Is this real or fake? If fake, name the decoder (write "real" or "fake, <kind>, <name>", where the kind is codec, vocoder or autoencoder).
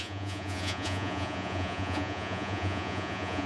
fake, vocoder, Vocos